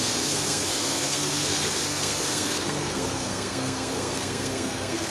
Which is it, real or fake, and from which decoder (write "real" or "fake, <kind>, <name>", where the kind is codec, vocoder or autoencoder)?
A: fake, codec, SNAC